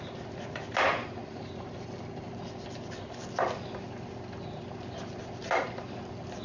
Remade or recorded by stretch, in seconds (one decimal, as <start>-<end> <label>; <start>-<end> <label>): 0.0-1.2 recorded; 1.2-2.3 remade; 2.3-6.4 recorded